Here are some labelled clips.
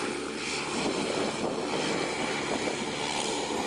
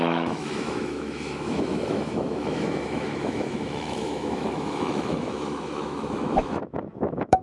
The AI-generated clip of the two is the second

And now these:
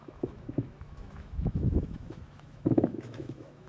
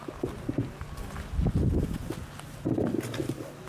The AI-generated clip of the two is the first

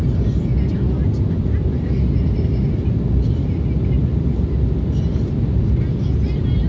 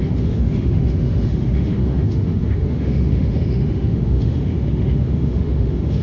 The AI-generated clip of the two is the second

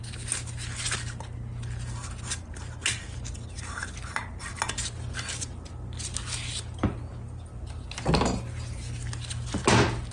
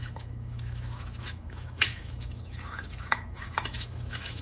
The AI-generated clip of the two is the second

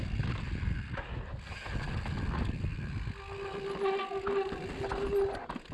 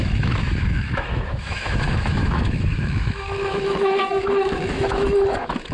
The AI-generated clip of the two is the second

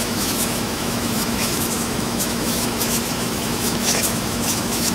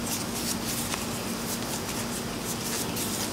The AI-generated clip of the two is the first